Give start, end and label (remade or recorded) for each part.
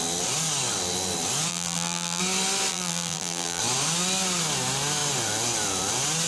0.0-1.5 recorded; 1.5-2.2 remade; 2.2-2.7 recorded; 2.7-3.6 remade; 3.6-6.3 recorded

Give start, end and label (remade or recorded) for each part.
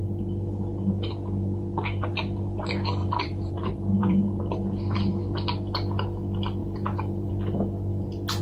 0.0-3.0 recorded; 3.0-4.4 remade; 4.4-6.6 recorded; 6.6-7.3 remade; 7.3-8.4 recorded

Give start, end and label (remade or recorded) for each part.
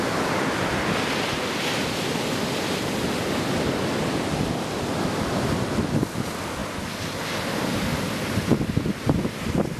0.0-9.8 recorded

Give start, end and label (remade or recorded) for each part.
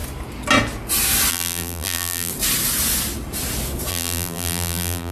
0.0-1.3 recorded; 1.3-2.3 remade; 2.3-3.9 recorded; 3.9-5.1 remade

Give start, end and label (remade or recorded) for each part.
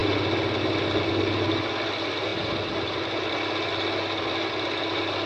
0.0-5.3 recorded